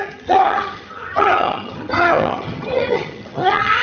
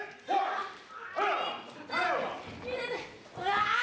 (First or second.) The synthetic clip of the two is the first